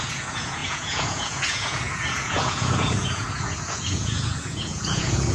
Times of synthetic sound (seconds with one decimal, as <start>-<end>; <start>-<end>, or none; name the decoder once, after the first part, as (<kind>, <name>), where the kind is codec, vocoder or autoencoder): 0.0-5.3 (vocoder, Vocos)